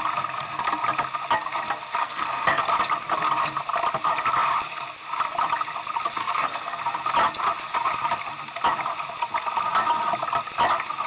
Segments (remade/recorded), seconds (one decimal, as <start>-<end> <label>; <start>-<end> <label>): 0.0-2.0 recorded; 2.0-2.6 remade; 2.6-6.2 recorded; 6.2-6.8 remade; 6.8-11.1 recorded